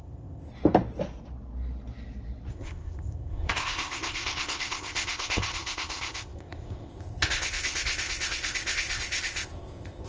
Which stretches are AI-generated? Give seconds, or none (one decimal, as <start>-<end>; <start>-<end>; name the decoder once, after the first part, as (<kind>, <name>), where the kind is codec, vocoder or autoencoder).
0.0-0.5 (codec, ZipCodec); 2.5-10.1